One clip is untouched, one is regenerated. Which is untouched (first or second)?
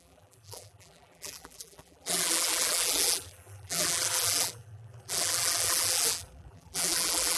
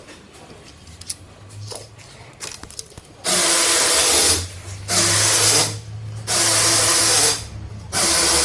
second